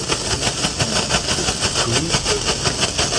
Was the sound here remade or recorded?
recorded